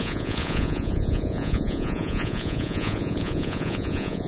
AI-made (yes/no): yes